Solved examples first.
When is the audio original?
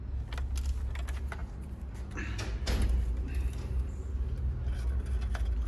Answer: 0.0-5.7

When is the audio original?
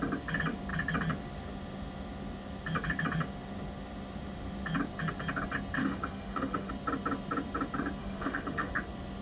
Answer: 0.0-5.8; 6.7-8.0; 8.7-9.2